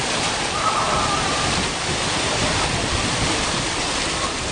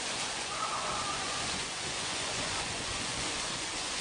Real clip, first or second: first